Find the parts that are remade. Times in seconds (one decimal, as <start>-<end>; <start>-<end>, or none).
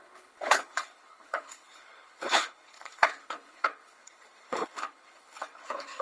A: 0.0-6.0